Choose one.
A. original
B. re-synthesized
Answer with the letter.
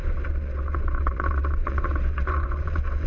B